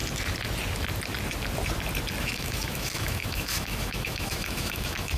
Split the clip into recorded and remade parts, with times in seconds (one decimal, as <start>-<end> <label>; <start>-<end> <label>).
0.0-2.2 recorded; 2.2-5.2 remade